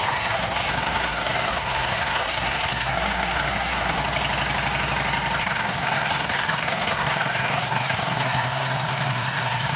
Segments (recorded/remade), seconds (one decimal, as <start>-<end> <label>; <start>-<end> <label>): 0.0-4.0 remade; 4.0-5.4 recorded; 5.4-9.8 remade